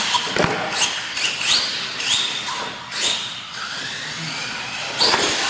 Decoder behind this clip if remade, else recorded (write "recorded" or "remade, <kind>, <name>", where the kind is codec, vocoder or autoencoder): recorded